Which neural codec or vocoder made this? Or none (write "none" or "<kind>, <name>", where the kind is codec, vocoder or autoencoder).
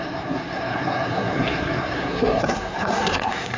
codec, SNAC